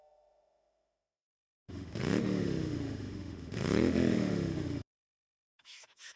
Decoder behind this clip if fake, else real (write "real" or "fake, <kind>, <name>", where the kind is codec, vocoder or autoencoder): fake, autoencoder, DAC-VAE